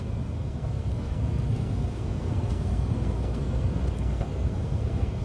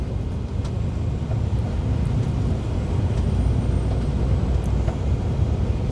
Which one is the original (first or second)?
second